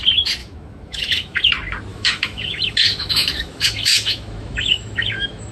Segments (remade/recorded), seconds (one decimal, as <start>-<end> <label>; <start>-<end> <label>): 0.0-0.4 recorded; 0.4-1.5 remade; 1.5-1.9 recorded; 1.9-5.5 remade